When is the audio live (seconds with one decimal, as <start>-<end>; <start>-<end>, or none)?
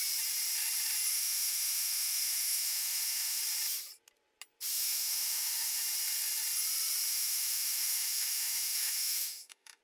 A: 0.0-1.1; 3.4-4.7; 5.8-7.1